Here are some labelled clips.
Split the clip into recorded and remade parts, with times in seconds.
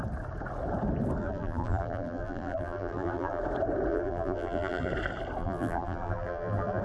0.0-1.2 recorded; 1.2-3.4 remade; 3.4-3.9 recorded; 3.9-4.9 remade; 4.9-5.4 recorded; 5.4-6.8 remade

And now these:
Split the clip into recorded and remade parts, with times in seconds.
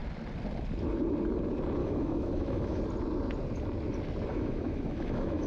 0.0-1.8 recorded; 1.8-2.8 remade; 2.8-4.3 recorded; 4.3-5.5 remade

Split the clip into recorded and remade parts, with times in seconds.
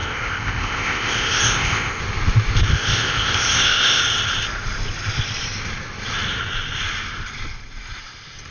0.0-2.0 remade; 2.0-2.7 recorded; 2.7-4.0 remade; 4.0-8.5 recorded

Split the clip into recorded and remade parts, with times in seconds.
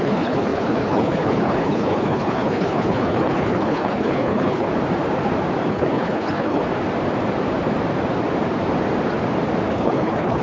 0.0-4.7 remade; 4.7-5.7 recorded; 5.7-6.6 remade; 6.6-9.7 recorded; 9.7-10.4 remade